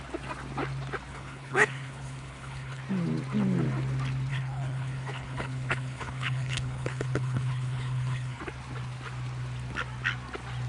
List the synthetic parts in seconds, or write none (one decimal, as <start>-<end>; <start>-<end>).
1.1-2.8; 4.3-8.4